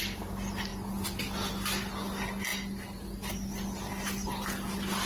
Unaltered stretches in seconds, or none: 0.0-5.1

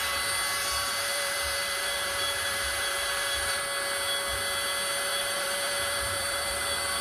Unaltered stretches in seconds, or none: 0.0-0.5; 3.6-5.1; 6.6-7.0

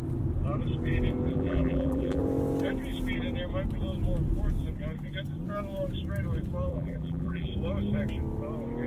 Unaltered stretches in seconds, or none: 0.0-1.3; 2.2-6.7; 7.5-8.9

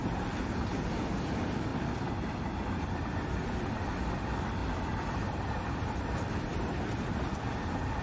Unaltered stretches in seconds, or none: 1.7-4.1; 4.6-5.2